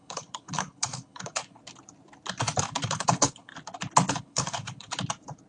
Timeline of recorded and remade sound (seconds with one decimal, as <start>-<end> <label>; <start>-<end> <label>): 0.0-1.6 remade; 1.6-2.6 recorded; 2.6-3.5 remade; 3.5-4.1 recorded; 4.1-4.9 remade; 4.9-5.5 recorded

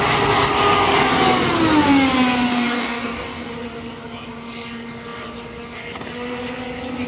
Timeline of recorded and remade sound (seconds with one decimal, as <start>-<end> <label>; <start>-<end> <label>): 0.0-2.5 recorded; 2.5-3.5 remade; 3.5-7.1 recorded

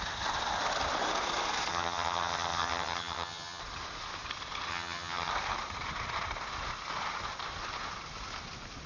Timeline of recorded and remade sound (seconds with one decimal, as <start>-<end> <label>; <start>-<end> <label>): 0.0-1.7 recorded; 1.7-3.6 remade; 3.6-4.7 recorded; 4.7-5.3 remade; 5.3-8.9 recorded

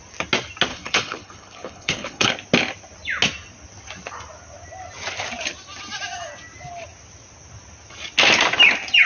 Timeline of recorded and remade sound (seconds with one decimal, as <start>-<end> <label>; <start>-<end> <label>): 0.0-0.7 recorded; 0.7-2.3 remade; 2.3-9.0 recorded

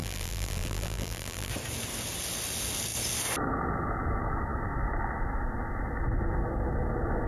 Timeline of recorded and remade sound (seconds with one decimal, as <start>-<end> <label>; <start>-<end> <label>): 0.0-1.5 remade; 1.5-7.3 recorded

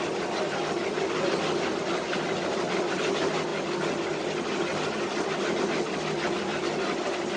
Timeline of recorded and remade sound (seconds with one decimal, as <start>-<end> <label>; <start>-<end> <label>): 0.0-7.4 recorded

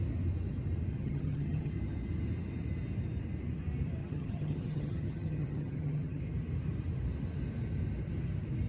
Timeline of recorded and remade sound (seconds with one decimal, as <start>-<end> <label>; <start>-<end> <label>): 0.0-0.9 recorded; 0.9-1.7 remade; 1.7-4.0 recorded; 4.0-6.2 remade; 6.2-8.7 recorded